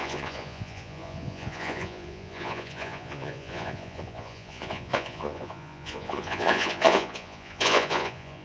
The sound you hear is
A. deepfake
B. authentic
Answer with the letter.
A